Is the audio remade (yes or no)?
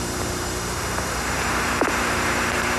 yes